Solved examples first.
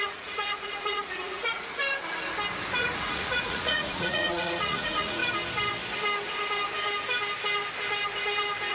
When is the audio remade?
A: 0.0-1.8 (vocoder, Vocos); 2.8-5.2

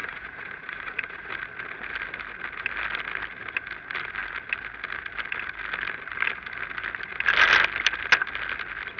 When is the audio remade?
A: 0.0-1.3 (vocoder, Vocos)

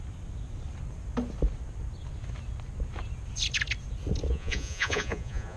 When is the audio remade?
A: 4.3-5.6 (vocoder, Vocos)

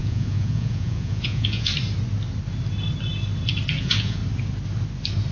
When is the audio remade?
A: 0.0-1.7 (vocoder, Vocos); 3.8-4.2

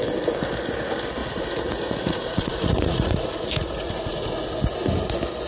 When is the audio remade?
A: 1.2-4.5 (vocoder, Vocos)

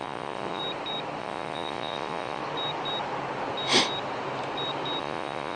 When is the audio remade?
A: 0.0-0.6 (vocoder, Vocos); 1.2-2.4; 5.0-5.6

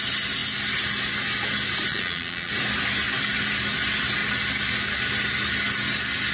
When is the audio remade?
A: 1.9-2.5 (vocoder, Vocos)

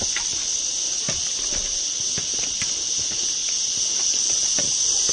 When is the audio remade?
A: none